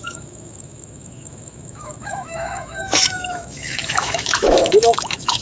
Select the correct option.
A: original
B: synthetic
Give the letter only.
B